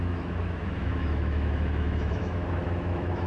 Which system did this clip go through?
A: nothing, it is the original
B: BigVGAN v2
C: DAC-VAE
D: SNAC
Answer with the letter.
C